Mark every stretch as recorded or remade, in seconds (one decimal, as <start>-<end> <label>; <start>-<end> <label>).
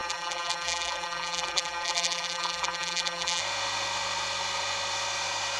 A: 0.0-3.4 remade; 3.4-5.6 recorded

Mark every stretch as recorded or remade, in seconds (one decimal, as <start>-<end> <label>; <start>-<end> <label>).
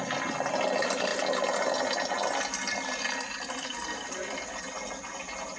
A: 0.0-5.6 recorded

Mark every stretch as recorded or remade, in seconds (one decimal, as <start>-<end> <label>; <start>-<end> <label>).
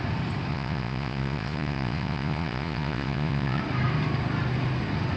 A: 0.0-0.5 recorded; 0.5-3.6 remade; 3.6-5.2 recorded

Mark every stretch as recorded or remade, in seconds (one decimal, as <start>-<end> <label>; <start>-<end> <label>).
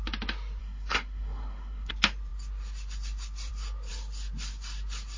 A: 0.0-0.6 recorded; 0.6-1.9 remade; 1.9-5.2 recorded